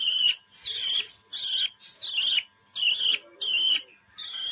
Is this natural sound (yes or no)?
yes